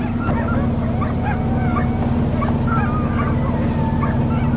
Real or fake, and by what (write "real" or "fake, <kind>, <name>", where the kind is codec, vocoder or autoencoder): real